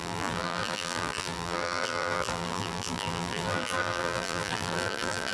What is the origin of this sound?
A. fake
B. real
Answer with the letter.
A